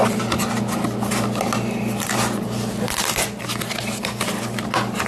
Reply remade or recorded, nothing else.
recorded